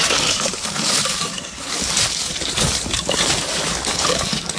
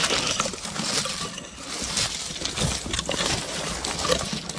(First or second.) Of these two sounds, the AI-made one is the first